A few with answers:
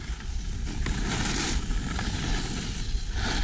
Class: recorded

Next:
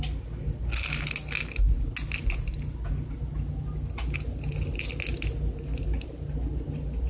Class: recorded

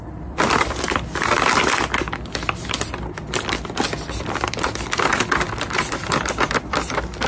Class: recorded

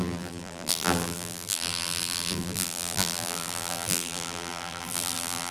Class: remade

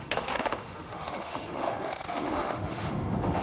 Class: remade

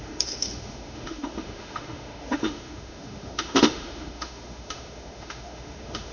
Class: remade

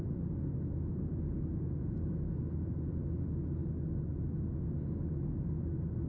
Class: recorded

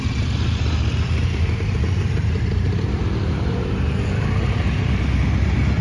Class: remade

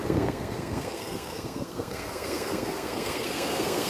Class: remade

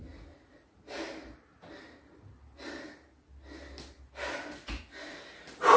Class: recorded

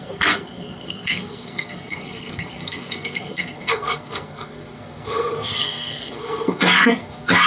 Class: remade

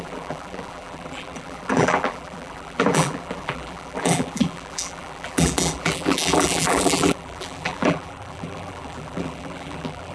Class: remade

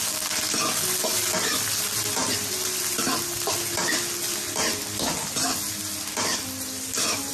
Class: recorded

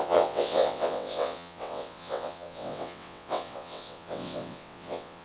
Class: remade